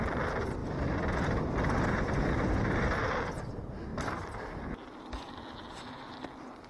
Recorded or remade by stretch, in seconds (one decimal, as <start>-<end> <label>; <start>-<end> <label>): 0.0-6.7 recorded